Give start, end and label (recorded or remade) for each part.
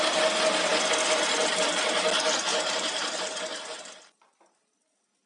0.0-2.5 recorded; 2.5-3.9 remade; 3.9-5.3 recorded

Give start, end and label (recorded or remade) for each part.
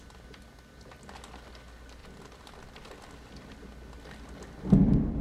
0.0-2.0 recorded; 2.0-2.9 remade; 2.9-5.2 recorded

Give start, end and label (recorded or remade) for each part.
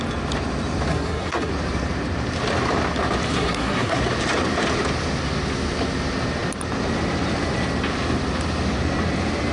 0.0-0.9 recorded; 0.9-1.5 remade; 1.5-3.3 recorded; 3.3-4.0 remade; 4.0-9.5 recorded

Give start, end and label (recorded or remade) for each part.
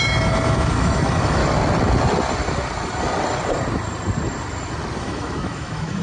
0.0-1.4 remade; 1.4-5.0 recorded; 5.0-6.0 remade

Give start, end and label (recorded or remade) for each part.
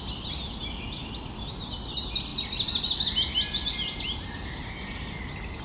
0.0-5.6 recorded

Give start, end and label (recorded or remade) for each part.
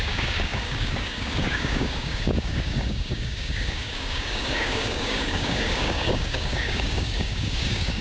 0.0-8.0 remade